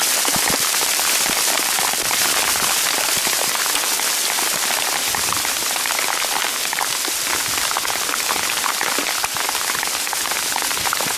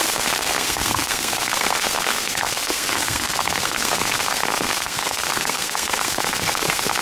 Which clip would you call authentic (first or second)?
first